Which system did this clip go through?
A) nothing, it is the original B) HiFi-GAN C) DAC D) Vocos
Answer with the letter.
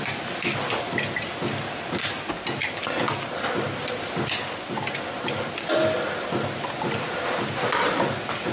A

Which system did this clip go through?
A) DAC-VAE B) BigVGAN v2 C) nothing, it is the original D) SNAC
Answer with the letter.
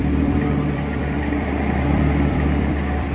B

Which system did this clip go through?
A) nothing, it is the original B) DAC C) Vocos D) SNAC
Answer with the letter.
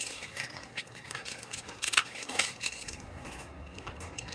D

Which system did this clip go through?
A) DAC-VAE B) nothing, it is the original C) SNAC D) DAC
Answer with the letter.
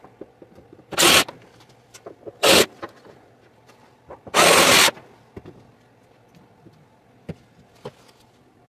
B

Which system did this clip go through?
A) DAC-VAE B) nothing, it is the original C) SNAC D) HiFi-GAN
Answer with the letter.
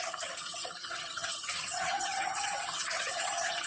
D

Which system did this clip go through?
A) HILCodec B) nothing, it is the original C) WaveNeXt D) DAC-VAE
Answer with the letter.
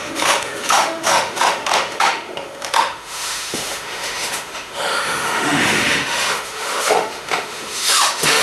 D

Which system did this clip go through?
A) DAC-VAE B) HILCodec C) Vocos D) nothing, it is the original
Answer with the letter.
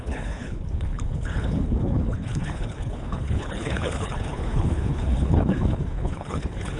B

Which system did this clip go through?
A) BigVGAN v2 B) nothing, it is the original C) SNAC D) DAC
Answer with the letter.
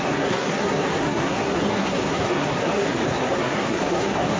C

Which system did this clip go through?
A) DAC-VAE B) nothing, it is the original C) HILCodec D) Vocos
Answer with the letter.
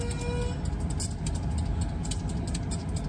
B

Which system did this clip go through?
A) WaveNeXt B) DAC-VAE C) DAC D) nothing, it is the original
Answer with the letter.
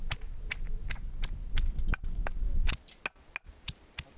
D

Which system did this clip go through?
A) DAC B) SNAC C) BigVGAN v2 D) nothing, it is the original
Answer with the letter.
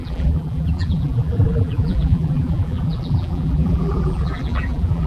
C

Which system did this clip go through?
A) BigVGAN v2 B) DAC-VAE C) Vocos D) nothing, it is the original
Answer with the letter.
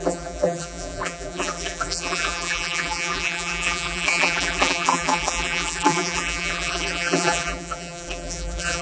A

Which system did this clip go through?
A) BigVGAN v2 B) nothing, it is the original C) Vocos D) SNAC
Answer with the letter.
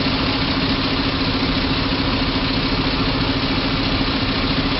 B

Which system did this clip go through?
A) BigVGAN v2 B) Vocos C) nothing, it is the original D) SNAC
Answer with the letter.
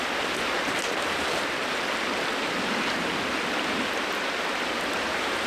C